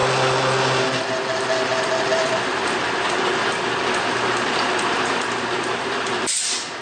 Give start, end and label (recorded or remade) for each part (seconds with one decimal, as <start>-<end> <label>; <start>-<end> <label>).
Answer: 0.0-6.8 recorded